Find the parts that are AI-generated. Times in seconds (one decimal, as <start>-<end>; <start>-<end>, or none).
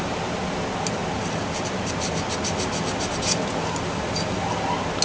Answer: none